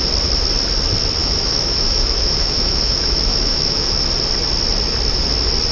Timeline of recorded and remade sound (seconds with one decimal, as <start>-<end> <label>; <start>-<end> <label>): 0.0-1.2 recorded; 1.2-4.0 remade; 4.0-5.7 recorded